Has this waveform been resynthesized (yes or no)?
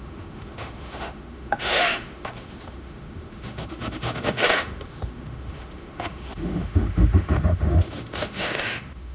yes